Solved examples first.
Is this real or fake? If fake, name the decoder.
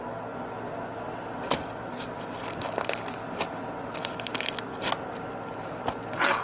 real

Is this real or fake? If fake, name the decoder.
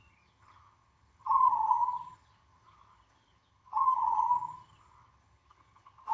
fake, vocoder, HiFi-GAN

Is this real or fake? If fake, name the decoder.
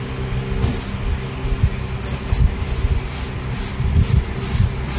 real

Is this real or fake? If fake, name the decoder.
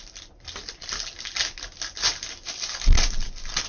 real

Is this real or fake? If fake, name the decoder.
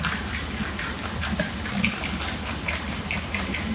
real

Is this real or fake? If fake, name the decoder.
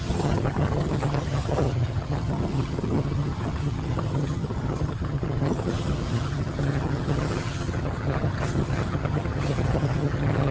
fake, vocoder, HiFi-GAN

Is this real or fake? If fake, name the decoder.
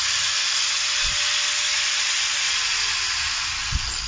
real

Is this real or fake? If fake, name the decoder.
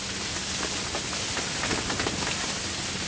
real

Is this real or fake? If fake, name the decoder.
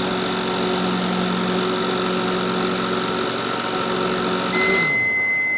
real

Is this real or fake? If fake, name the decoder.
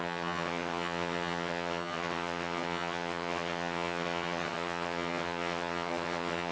fake, vocoder, HiFi-GAN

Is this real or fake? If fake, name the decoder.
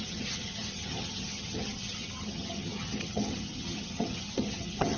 fake, vocoder, HiFi-GAN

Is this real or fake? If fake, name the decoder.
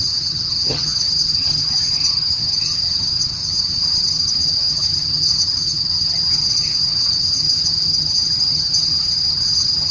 fake, vocoder, HiFi-GAN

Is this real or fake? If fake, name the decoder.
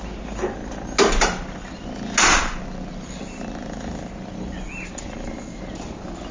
real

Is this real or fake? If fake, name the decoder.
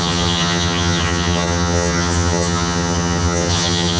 fake, vocoder, HiFi-GAN